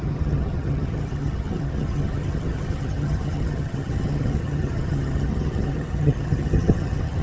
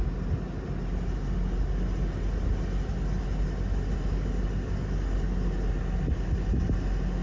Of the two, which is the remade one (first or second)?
first